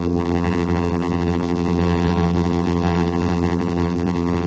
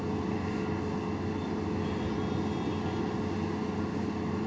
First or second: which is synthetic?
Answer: first